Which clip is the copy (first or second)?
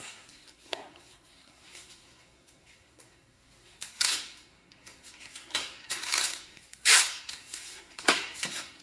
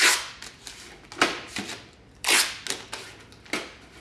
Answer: first